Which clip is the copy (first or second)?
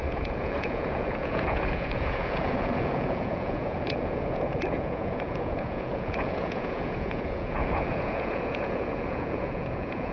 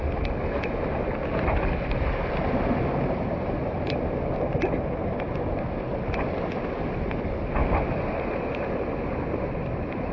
first